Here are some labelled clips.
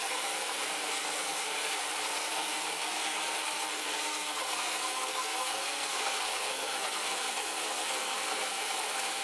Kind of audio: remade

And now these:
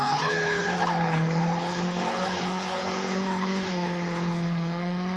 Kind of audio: remade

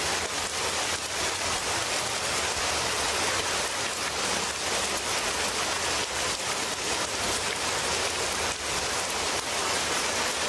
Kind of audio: recorded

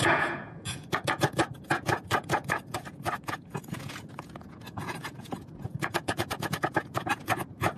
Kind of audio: remade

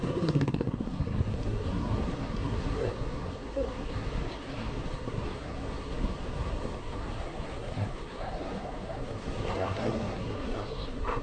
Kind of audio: remade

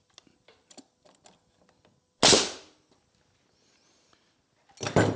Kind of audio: recorded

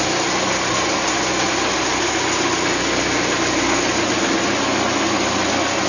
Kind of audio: recorded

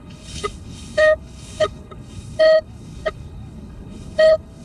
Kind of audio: remade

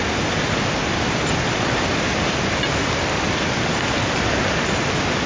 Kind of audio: recorded